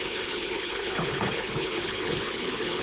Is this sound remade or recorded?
remade